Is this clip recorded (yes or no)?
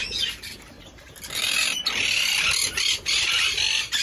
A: yes